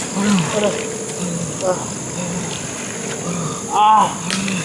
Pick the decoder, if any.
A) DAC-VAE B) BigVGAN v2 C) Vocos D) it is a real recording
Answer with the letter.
D